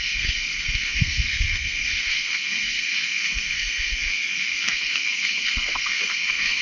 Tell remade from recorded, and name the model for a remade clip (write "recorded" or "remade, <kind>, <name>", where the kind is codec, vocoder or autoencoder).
remade, codec, SNAC